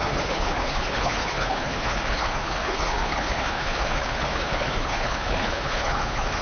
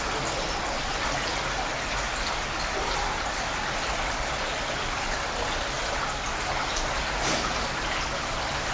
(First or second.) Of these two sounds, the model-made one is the first